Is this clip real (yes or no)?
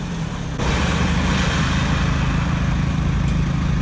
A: yes